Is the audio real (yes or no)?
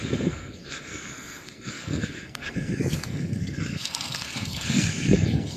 no